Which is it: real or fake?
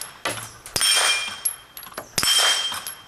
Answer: real